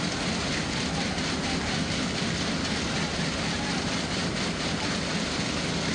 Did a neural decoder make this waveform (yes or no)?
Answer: no